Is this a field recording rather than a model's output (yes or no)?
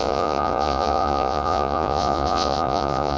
no